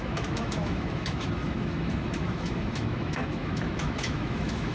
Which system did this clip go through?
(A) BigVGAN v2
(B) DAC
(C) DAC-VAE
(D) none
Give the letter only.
C